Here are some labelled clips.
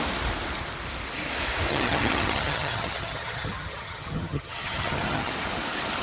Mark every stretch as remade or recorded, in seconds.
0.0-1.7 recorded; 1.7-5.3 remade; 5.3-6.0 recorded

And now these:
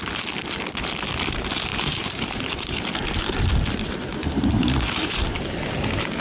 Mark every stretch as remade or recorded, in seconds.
0.0-1.7 recorded; 1.7-2.7 remade; 2.7-4.1 recorded; 4.1-5.1 remade; 5.1-6.2 recorded

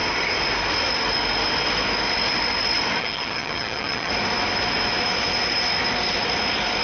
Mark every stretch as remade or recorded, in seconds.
0.0-3.0 recorded; 3.0-4.1 remade; 4.1-6.8 recorded